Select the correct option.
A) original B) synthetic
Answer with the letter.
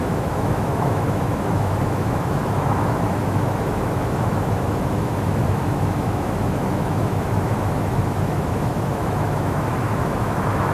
B